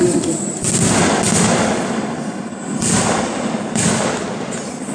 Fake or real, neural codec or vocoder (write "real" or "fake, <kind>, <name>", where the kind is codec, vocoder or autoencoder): real